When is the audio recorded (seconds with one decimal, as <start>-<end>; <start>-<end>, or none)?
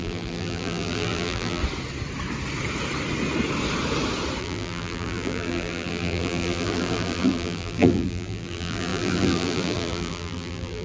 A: 1.6-4.4